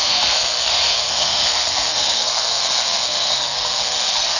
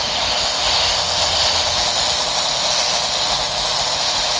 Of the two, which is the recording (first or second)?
second